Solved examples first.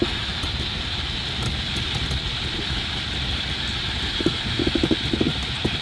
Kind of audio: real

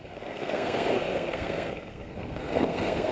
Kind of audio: fake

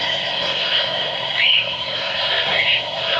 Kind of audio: fake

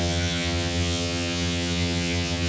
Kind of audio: fake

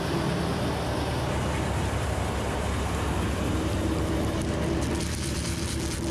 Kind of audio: real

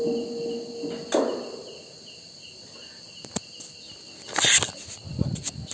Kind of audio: real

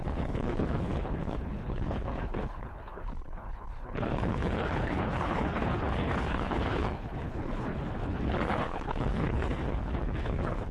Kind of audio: fake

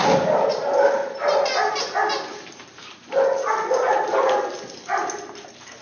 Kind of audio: real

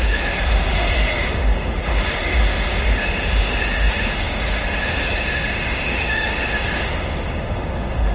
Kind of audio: fake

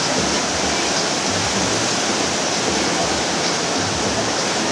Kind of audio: real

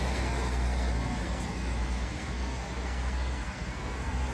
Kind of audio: fake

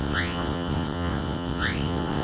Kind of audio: fake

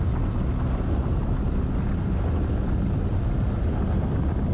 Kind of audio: real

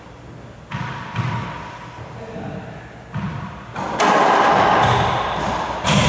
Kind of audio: real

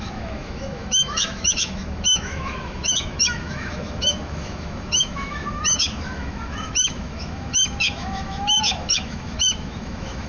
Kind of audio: fake